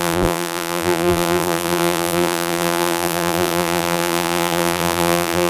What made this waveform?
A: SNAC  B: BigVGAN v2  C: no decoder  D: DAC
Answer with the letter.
B